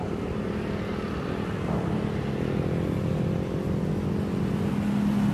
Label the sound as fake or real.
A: real